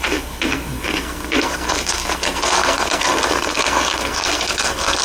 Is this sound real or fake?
fake